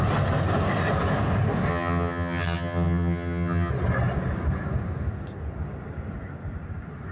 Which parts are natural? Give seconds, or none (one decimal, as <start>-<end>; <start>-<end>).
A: 0.0-1.7; 3.7-7.1